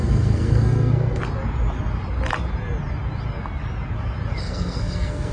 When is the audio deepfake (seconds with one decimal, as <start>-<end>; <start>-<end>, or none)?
0.0-1.2; 4.4-5.3